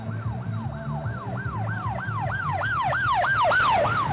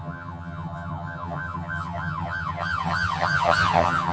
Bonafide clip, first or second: first